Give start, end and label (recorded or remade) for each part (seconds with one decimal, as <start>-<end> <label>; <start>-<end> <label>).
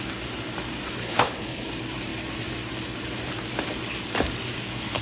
0.0-1.0 recorded; 1.0-1.7 remade; 1.7-5.0 recorded